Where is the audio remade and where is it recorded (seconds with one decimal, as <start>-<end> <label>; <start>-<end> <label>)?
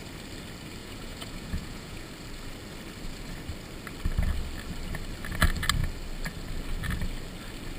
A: 0.0-0.8 recorded; 0.8-2.1 remade; 2.1-7.8 recorded